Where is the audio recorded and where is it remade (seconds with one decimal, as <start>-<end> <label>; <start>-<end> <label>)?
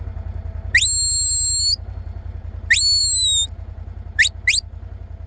0.0-5.3 recorded